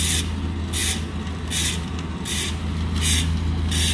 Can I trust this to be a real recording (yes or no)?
yes